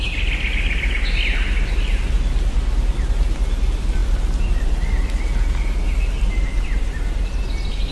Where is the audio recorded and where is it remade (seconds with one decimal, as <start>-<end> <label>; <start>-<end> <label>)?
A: 0.0-7.9 recorded